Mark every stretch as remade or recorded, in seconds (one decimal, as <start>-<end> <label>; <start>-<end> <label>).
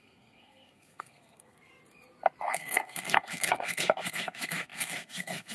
0.0-1.7 remade; 1.7-2.5 recorded; 2.5-5.5 remade